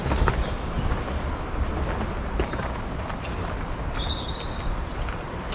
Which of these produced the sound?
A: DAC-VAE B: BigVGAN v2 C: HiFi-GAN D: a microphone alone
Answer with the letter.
D